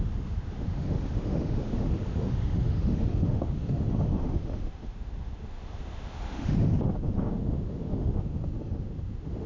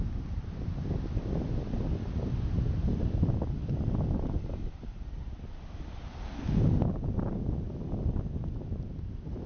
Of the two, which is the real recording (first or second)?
second